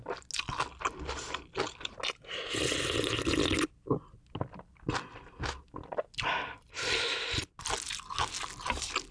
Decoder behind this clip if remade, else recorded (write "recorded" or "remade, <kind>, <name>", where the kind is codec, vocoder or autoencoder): recorded